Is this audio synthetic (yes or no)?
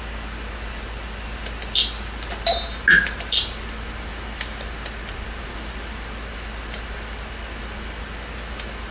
no